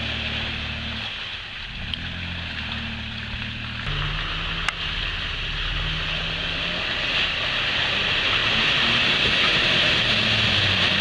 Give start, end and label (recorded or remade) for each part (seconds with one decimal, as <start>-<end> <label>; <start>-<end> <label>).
0.0-11.0 recorded